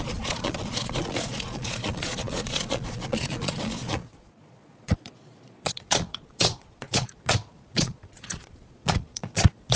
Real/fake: fake